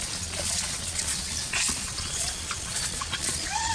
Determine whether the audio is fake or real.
fake